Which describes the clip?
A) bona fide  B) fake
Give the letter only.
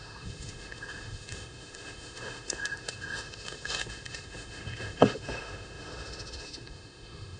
B